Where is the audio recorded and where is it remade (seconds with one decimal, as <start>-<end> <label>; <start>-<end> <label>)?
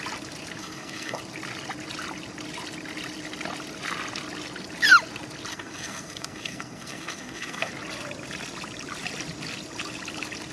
0.0-0.6 recorded; 0.6-1.2 remade; 1.2-5.5 recorded; 5.5-7.7 remade; 7.7-10.5 recorded